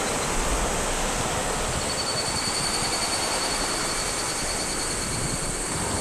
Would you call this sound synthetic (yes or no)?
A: no